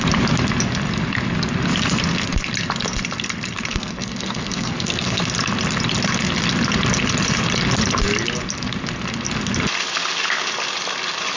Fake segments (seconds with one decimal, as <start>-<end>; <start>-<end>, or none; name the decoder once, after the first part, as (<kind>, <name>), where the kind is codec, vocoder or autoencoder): 3.7-5.2 (codec, SNAC)

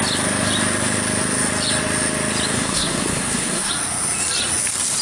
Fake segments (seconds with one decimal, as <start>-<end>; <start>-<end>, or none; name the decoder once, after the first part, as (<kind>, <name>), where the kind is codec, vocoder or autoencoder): 2.5-3.7 (codec, SNAC)